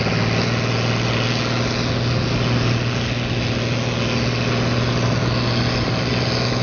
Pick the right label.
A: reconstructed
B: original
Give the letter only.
B